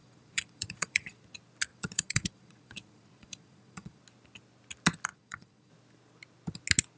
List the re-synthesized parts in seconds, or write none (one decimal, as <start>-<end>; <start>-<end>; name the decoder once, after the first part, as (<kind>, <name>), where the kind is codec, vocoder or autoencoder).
0.0-1.2 (vocoder, Vocos); 1.7-4.0; 5.1-5.7